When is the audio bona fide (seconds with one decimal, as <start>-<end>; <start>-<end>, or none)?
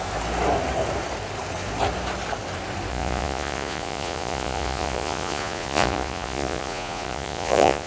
0.0-2.9